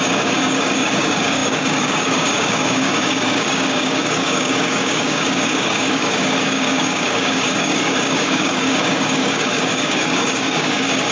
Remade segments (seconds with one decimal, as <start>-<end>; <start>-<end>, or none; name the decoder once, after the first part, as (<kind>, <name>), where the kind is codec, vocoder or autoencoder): 0.0-11.1 (codec, DAC)